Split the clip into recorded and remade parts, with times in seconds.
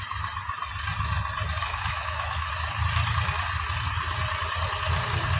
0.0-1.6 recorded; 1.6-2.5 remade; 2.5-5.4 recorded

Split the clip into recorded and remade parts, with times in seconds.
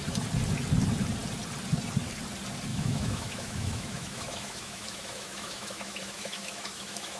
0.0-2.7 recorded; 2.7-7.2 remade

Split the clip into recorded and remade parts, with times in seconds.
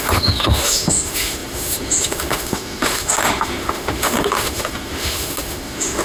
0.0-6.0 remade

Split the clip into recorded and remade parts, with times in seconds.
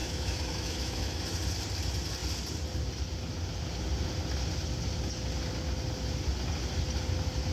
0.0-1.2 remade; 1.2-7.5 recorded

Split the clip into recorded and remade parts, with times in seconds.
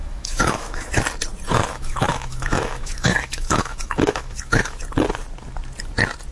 0.0-1.0 remade; 1.0-1.5 recorded; 1.5-4.8 remade; 4.8-6.3 recorded